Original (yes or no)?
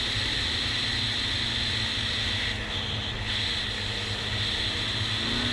yes